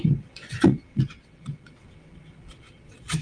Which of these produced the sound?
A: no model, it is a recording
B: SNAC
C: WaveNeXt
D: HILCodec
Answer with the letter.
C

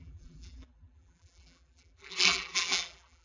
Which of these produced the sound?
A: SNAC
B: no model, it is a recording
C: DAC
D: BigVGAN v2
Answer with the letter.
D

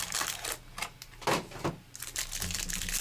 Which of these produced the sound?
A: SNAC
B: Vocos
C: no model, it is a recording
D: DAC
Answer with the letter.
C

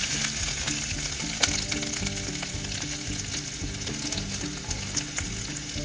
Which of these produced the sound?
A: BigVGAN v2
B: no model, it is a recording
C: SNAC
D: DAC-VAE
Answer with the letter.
B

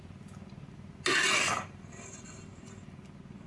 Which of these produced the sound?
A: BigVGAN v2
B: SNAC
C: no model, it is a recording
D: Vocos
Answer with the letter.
C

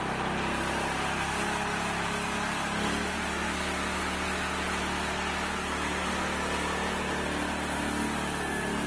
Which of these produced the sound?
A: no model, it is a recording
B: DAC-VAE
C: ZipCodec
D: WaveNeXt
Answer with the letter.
A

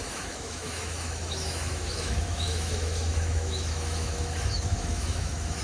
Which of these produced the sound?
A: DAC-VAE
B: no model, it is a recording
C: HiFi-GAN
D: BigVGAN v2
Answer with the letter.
A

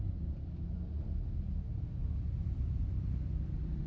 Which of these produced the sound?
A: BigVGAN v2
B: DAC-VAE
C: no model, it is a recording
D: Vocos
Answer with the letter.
C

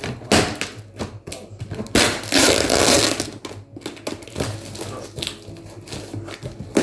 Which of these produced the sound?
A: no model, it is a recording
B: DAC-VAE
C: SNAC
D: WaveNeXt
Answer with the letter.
A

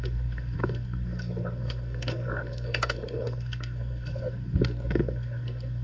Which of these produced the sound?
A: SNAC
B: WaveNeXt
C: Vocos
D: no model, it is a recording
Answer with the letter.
A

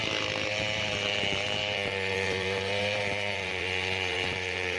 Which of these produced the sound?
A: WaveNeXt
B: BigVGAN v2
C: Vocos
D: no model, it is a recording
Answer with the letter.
B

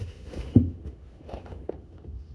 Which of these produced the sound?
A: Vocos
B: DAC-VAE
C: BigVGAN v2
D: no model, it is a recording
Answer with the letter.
B